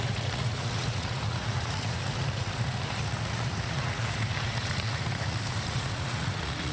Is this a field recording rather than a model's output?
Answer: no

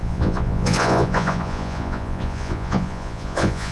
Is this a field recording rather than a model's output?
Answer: no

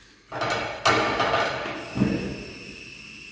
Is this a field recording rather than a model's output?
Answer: yes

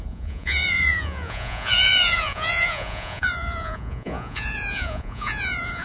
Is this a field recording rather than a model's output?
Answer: no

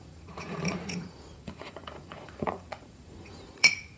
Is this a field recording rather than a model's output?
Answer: no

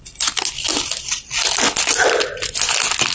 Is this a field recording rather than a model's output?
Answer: yes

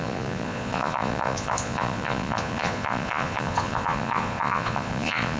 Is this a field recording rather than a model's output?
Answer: no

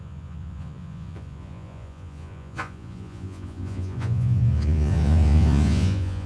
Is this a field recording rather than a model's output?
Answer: no